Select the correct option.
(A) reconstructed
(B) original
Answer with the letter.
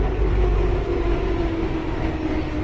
B